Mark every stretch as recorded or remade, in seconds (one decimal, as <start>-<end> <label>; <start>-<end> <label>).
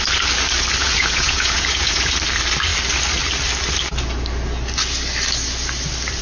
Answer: 0.0-0.8 recorded; 0.8-2.1 remade; 2.1-6.2 recorded